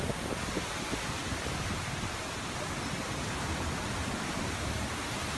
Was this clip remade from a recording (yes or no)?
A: no